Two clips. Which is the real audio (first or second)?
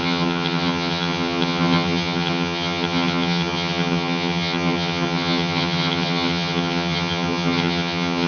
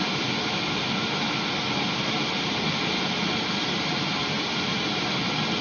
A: second